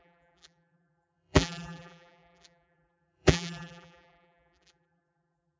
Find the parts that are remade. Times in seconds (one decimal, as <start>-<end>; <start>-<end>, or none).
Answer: 0.0-5.6